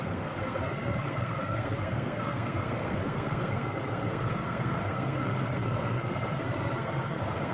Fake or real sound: fake